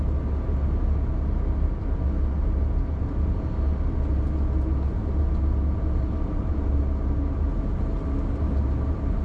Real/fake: real